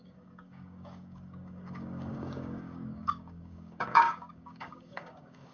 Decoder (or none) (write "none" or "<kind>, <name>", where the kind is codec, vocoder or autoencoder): codec, DAC